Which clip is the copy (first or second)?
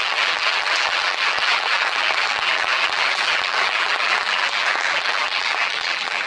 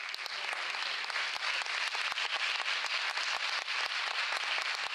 first